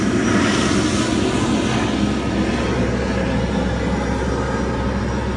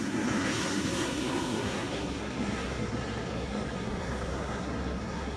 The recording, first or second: first